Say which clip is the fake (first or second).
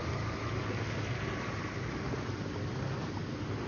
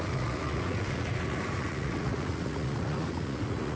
second